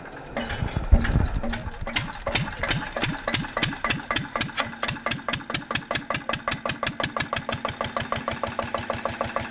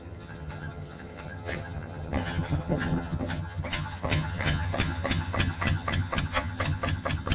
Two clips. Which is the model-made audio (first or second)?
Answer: second